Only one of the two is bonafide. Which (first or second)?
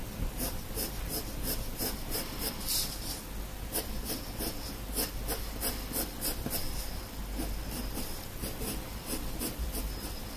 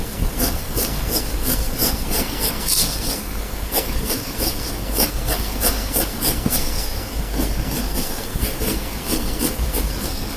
first